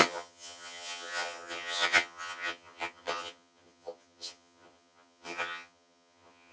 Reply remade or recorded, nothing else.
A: remade